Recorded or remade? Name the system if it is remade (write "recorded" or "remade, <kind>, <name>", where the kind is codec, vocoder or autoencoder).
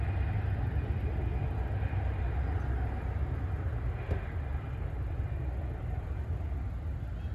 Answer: recorded